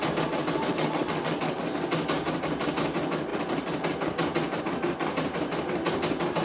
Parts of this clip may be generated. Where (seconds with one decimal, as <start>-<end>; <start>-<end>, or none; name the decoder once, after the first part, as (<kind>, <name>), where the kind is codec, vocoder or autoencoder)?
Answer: 0.7-1.6 (vocoder, WaveNeXt)